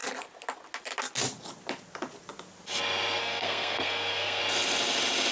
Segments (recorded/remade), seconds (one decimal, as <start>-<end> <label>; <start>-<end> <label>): 0.0-3.2 recorded; 3.2-4.4 remade; 4.4-5.3 recorded

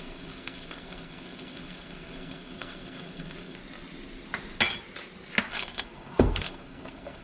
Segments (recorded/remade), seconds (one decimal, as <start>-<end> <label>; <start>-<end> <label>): 0.0-3.6 remade; 3.6-5.5 recorded; 5.5-7.2 remade